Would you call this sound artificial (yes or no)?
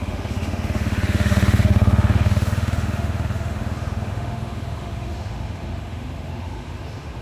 yes